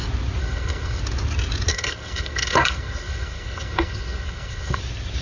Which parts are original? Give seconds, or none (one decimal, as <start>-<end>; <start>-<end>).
0.0-0.4; 1.0-1.7; 4.8-5.2